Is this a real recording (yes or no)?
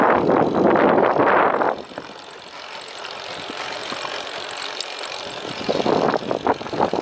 yes